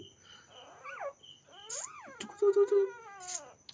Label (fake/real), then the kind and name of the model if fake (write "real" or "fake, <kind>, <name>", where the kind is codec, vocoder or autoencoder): real